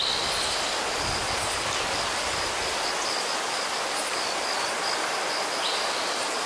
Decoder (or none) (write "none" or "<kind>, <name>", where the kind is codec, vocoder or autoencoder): none